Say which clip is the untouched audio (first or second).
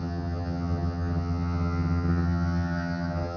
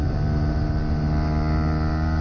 second